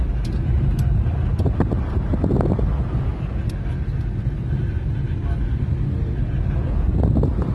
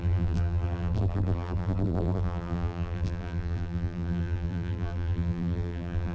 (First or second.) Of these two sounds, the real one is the first